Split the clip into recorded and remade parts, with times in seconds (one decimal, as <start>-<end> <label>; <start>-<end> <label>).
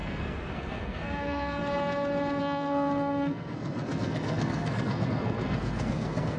0.0-1.6 remade; 1.6-2.4 recorded; 2.4-6.4 remade